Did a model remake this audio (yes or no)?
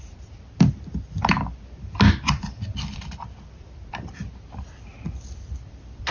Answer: yes